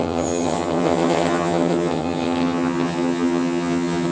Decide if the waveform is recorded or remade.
remade